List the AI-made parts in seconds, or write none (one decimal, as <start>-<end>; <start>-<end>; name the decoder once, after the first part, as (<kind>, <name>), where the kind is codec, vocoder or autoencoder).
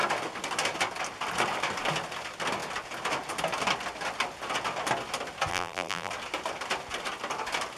5.5-6.1 (vocoder, BigVGAN v2)